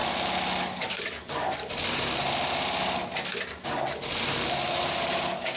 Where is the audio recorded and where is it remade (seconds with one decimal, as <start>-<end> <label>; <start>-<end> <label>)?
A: 0.0-0.6 recorded; 0.6-1.6 remade; 1.6-4.7 recorded; 4.7-5.6 remade